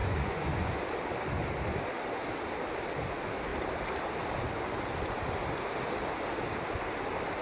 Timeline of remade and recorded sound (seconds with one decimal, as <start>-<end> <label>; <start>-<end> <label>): 0.0-0.8 remade; 0.8-7.4 recorded